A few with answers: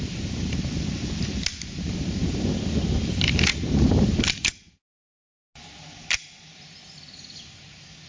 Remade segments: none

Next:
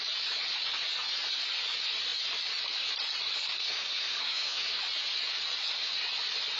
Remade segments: 3.6-4.8 (codec, SNAC)